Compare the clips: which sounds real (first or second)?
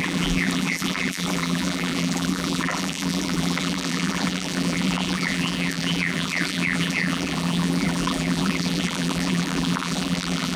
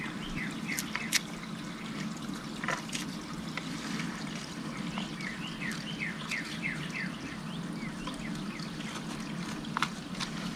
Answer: second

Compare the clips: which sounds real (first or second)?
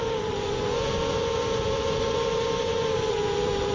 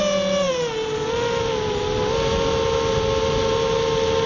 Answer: second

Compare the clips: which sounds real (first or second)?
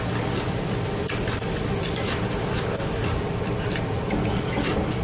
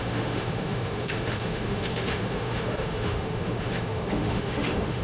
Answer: first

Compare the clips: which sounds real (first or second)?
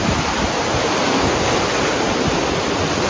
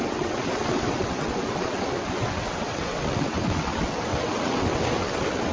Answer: first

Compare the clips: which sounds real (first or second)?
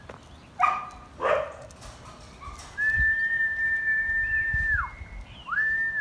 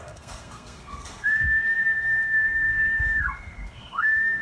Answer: first